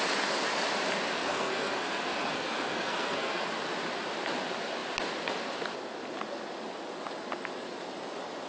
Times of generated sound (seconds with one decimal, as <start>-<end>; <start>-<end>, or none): 1.1-3.5